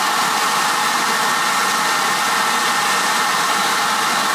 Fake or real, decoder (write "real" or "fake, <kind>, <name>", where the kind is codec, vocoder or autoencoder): real